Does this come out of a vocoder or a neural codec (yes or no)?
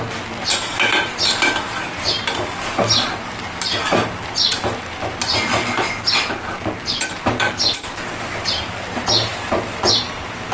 no